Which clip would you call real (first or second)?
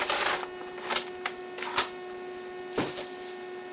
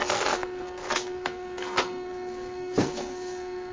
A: first